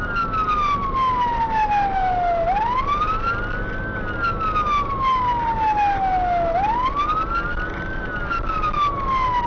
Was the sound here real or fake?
real